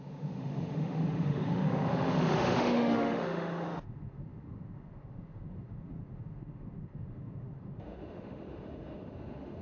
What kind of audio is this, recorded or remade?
remade